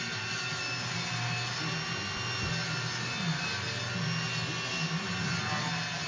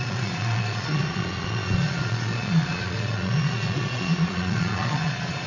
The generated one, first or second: second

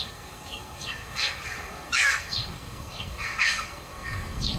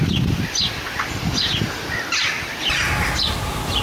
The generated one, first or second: first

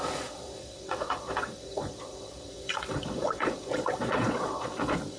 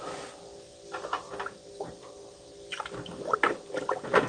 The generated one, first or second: first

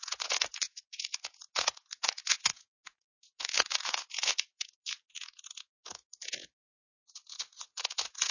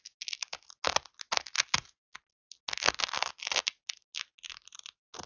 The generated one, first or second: first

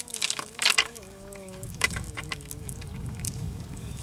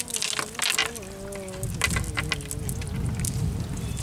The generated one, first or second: first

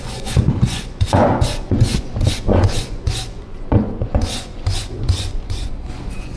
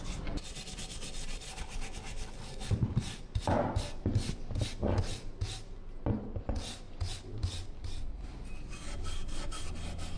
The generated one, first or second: first